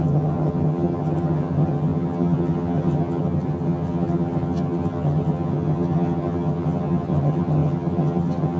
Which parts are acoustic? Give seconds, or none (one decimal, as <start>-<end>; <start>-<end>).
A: none